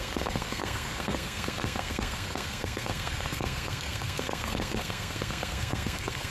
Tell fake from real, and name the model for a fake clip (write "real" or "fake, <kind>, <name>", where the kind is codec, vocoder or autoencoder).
fake, codec, SNAC